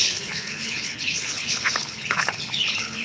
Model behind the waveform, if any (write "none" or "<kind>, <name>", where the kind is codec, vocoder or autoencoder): codec, HILCodec